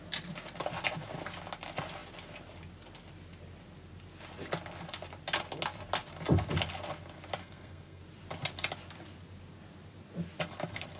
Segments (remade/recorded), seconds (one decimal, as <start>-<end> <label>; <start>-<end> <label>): 0.0-7.4 recorded; 7.4-8.0 remade; 8.0-11.0 recorded